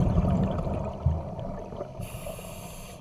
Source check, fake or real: real